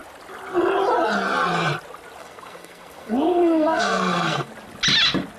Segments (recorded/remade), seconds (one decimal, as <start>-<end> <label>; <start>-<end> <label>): 0.0-2.2 recorded; 2.2-4.5 remade; 4.5-5.4 recorded